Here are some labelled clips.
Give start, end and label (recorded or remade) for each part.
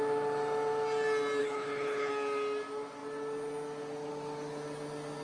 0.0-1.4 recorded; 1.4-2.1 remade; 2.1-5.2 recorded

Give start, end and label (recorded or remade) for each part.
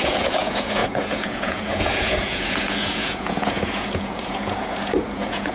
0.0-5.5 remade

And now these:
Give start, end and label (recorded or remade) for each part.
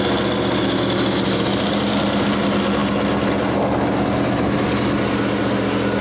0.0-6.0 recorded